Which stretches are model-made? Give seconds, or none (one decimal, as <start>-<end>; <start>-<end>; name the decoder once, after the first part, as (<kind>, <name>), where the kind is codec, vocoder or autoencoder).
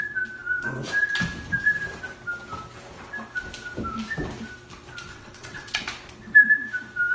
5.1-5.8 (vocoder, WaveNeXt)